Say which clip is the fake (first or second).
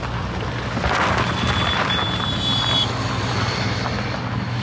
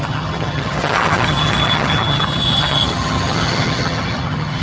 second